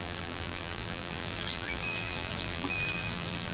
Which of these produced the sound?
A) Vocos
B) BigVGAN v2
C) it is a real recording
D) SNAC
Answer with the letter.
B